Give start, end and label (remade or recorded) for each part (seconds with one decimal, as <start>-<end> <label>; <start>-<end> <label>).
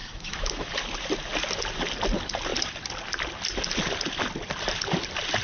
0.0-0.7 remade; 0.7-5.4 recorded